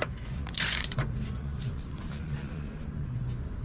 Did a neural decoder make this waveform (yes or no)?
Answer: yes